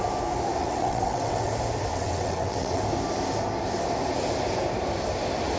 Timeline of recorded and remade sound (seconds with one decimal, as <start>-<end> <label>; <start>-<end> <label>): 0.0-0.6 recorded; 0.6-1.5 remade; 1.5-1.9 recorded; 1.9-2.8 remade; 2.8-5.6 recorded